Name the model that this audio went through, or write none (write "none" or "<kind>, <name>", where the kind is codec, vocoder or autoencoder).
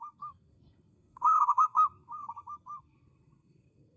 codec, SNAC